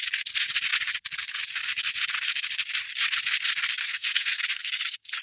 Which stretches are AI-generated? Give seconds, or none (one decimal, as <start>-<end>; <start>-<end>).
3.8-4.4